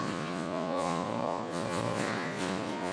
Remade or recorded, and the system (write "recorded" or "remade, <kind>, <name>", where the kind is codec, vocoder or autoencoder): remade, vocoder, Vocos